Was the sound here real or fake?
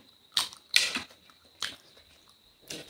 real